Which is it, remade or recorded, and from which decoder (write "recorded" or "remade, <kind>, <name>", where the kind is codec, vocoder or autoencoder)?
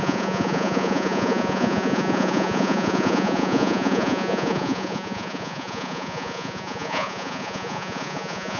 remade, vocoder, Vocos